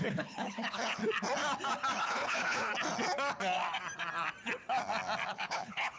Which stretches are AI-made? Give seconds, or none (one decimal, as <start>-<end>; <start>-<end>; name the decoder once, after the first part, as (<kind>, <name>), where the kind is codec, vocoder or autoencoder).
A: 0.0-1.0 (codec, HILCodec); 2.0-2.7; 5.3-6.0